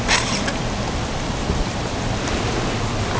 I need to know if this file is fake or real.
real